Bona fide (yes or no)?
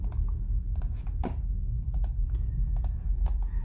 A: yes